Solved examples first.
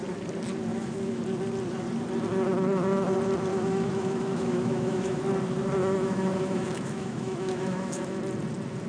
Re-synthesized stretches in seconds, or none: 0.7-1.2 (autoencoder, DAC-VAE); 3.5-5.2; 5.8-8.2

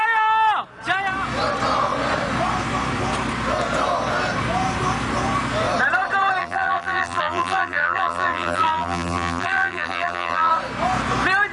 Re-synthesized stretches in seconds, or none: 6.4-10.5 (vocoder, BigVGAN v2)

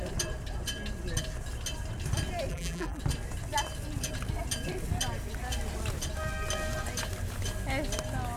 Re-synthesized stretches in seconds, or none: 2.5-3.0 (vocoder, BigVGAN v2)